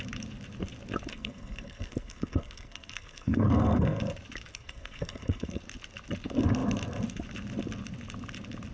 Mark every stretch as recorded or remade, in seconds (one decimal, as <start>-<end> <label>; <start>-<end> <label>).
0.0-1.1 recorded; 1.1-4.0 remade; 4.0-4.5 recorded; 4.5-5.6 remade; 5.6-8.7 recorded